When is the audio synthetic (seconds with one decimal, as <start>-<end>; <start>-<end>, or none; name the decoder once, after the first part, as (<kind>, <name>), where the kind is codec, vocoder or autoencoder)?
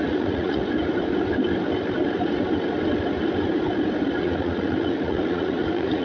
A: 0.0-0.6 (vocoder, Vocos); 4.2-6.0